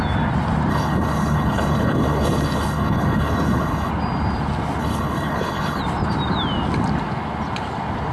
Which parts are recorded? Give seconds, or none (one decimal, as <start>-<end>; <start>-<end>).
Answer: 0.0-0.7; 3.9-4.8; 5.8-8.1